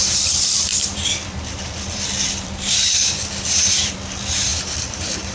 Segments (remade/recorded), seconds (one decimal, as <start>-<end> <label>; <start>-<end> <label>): 0.0-5.3 remade